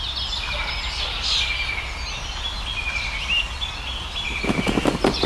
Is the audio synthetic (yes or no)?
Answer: no